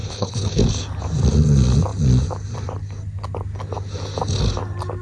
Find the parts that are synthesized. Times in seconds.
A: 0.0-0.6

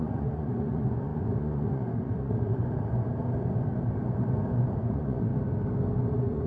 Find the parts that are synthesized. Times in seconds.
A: 0.0-2.6; 4.8-5.3; 6.1-6.5